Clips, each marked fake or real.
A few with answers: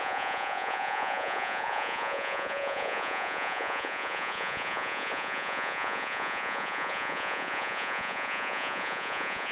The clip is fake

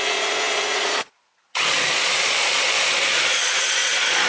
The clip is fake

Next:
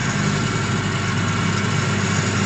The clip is real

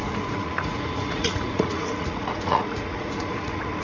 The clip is fake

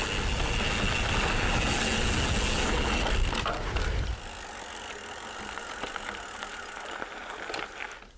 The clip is real